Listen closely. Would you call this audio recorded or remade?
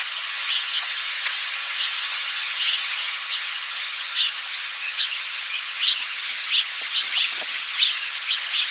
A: remade